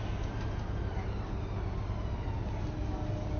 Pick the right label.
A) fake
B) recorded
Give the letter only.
B